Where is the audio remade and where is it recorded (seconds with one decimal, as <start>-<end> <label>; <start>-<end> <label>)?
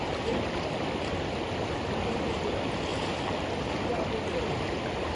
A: 0.0-2.9 remade; 2.9-4.4 recorded; 4.4-5.2 remade